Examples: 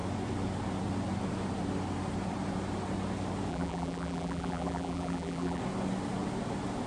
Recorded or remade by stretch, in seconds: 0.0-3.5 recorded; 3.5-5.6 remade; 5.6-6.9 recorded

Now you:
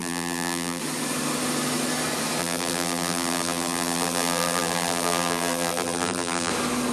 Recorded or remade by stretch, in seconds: 0.0-0.8 remade; 0.8-2.4 recorded; 2.4-6.5 remade; 6.5-6.9 recorded